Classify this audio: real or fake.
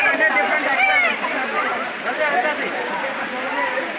real